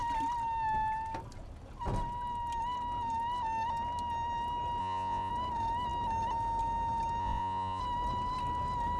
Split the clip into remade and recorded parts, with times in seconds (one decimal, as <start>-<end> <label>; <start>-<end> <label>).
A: 0.0-4.8 recorded; 4.8-5.3 remade; 5.3-7.2 recorded; 7.2-7.8 remade; 7.8-9.0 recorded